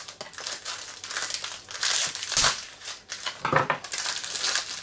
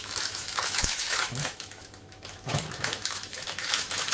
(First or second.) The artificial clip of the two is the second